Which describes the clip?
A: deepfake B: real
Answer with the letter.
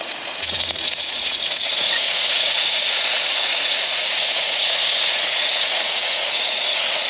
A